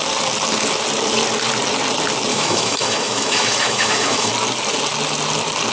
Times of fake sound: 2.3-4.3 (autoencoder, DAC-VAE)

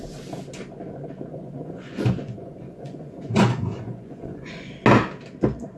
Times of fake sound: 1.3-4.7 (vocoder, Vocos)